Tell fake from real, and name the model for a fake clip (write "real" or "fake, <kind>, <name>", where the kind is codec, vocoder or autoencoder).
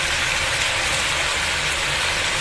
real